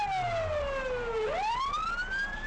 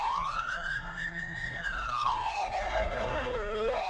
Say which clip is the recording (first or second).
first